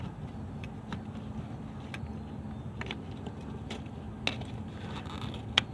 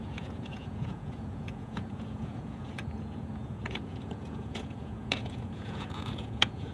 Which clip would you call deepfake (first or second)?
second